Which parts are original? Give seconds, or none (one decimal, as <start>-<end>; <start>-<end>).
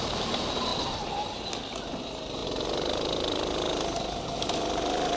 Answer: 0.0-5.2